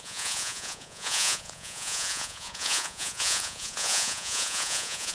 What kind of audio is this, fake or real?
fake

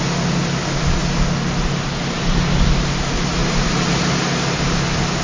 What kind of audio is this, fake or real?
real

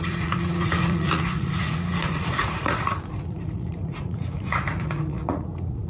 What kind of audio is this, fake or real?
fake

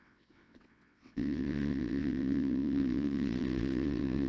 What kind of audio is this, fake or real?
fake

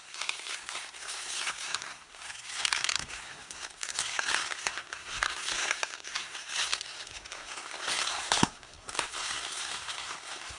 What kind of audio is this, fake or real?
fake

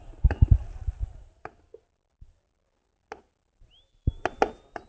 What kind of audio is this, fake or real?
real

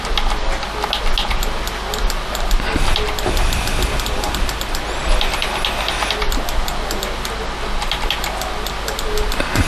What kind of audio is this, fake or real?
real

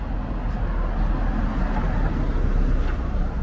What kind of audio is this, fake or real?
real